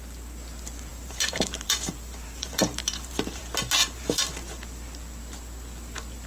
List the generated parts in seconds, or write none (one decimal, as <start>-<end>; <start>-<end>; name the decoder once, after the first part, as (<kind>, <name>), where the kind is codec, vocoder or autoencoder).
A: 0.9-3.4 (vocoder, BigVGAN v2); 3.8-4.3